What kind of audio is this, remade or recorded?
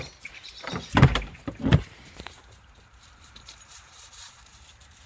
remade